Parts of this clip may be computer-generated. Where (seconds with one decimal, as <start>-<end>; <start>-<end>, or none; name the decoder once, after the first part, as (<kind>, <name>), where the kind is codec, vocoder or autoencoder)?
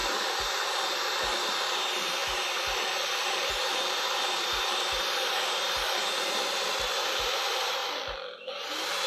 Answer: 0.0-0.6 (vocoder, BigVGAN v2); 2.2-5.5; 7.8-8.7